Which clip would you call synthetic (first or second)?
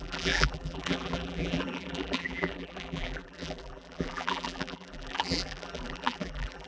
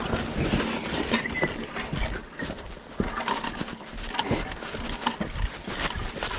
first